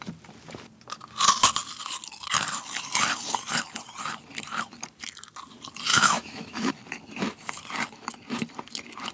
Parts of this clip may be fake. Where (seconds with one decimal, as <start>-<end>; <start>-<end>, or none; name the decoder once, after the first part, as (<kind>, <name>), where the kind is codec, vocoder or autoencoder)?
5.9-6.7 (autoencoder, DAC-VAE)